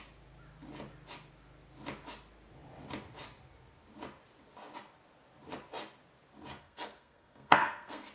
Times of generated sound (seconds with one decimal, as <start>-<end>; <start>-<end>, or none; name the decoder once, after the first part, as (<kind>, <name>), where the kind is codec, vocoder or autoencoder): 6.6-8.1 (codec, SNAC)

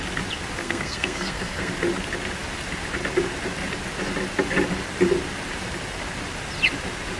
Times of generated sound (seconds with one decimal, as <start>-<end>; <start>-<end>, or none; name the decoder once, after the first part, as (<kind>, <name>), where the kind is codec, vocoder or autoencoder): 0.6-1.7 (codec, SNAC)

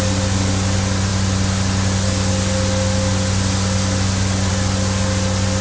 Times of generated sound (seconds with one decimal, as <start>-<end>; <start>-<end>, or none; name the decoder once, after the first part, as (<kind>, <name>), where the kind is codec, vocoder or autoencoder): none

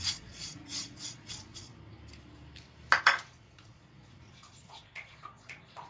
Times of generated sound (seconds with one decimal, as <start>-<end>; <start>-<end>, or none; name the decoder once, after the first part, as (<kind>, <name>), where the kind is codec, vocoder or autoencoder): 0.0-1.7 (vocoder, Vocos); 3.0-5.9

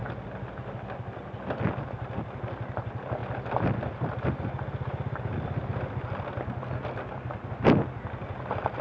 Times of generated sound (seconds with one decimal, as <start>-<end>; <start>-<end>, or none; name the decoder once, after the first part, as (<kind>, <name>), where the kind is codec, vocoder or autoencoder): none